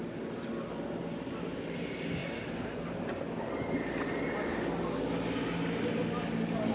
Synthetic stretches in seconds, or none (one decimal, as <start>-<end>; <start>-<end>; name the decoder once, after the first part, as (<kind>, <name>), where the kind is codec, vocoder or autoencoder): none